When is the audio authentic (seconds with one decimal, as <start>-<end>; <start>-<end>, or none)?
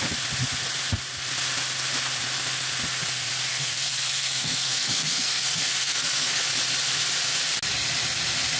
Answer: 0.0-3.5; 6.4-8.6